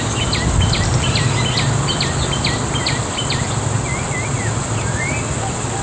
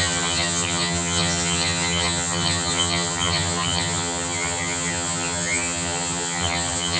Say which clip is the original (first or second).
first